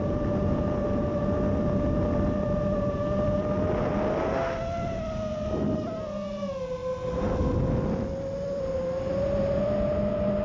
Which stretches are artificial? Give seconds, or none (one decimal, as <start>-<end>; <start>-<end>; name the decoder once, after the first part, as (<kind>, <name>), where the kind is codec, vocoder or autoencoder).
none